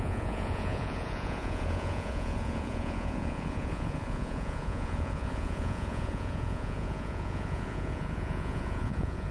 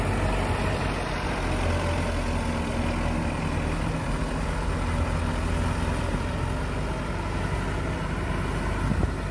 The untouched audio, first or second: second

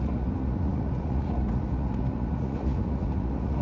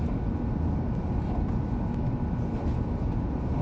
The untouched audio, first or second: second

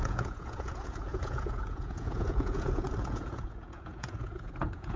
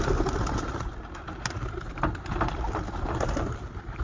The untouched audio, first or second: second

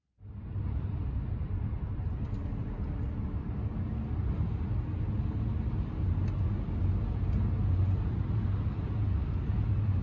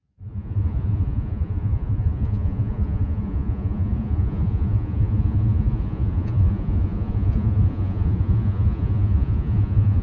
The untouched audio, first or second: first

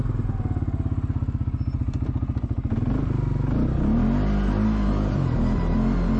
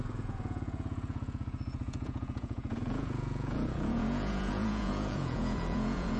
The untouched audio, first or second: first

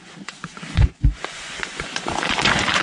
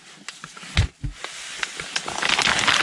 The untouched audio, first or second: second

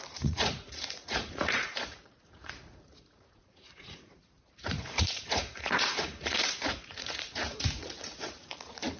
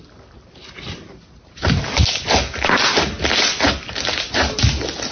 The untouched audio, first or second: second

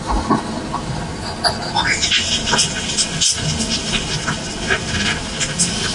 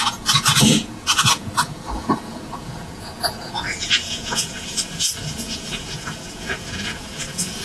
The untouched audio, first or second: first